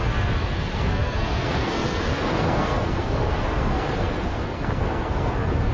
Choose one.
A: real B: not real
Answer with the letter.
B